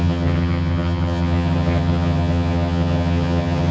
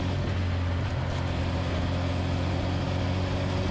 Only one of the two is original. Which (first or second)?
second